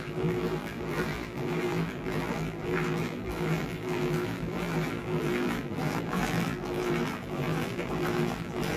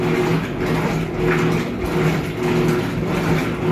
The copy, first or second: first